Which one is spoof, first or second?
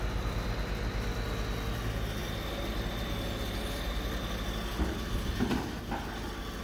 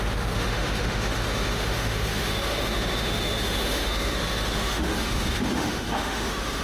second